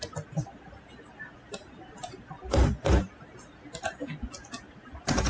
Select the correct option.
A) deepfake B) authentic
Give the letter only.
B